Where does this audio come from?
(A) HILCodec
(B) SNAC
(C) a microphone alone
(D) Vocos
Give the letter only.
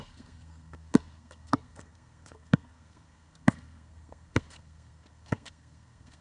B